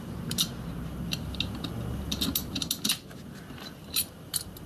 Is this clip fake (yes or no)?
no